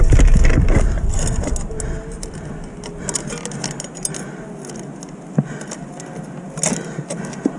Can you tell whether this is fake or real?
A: real